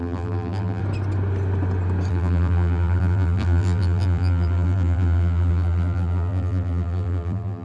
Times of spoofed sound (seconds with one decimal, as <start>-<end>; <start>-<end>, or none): 0.0-0.8; 2.1-7.6